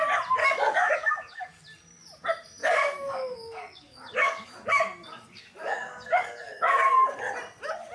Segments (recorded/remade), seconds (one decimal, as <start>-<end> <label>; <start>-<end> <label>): 0.0-0.4 recorded; 0.4-1.6 remade; 1.6-2.6 recorded; 2.6-6.9 remade; 6.9-7.9 recorded